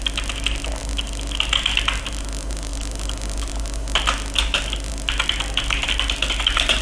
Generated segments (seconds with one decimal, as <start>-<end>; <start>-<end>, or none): none